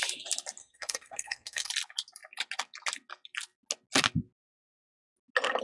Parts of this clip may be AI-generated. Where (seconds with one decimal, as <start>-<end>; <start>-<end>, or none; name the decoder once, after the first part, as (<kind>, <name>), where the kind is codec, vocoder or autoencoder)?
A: 0.6-1.7 (codec, SNAC)